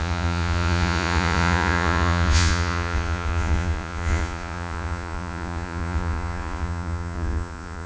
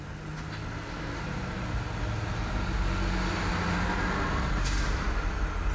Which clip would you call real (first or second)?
second